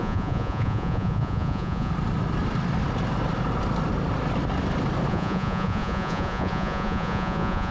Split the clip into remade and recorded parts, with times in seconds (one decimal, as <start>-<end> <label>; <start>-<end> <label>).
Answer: 0.0-1.9 remade; 1.9-5.1 recorded; 5.1-7.7 remade